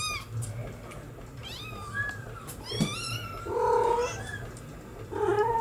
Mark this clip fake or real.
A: real